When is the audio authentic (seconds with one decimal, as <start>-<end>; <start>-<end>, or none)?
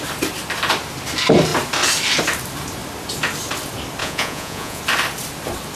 0.0-4.0; 4.8-5.8